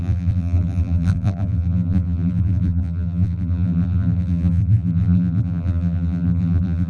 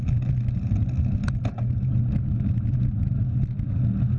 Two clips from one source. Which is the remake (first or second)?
first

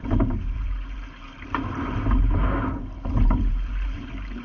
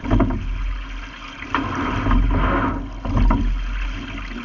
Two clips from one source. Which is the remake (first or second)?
first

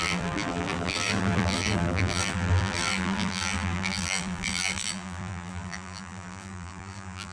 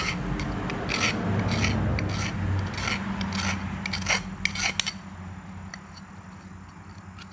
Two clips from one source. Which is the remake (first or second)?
first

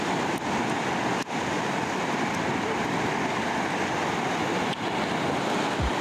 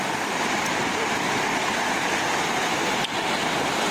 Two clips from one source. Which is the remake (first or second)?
second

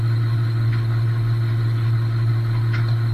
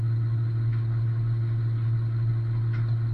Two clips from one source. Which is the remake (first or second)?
first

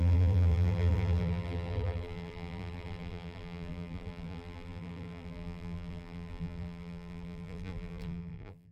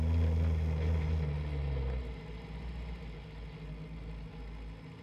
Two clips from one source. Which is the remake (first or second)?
first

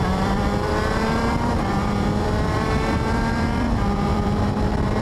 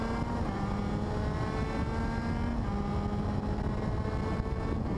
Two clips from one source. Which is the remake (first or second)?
first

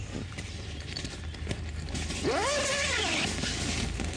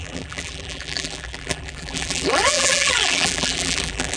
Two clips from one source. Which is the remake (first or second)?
second